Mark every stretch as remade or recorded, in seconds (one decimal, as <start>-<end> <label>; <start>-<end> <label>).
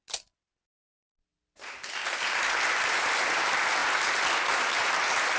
0.0-5.4 recorded